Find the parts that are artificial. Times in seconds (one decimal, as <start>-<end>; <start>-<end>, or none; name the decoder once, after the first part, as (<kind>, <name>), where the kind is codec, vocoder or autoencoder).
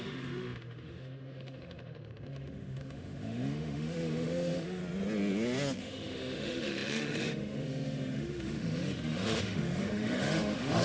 0.0-4.8 (autoencoder, DAC-VAE); 5.8-10.8